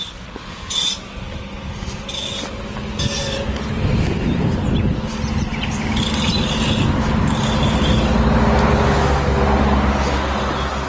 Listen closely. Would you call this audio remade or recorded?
recorded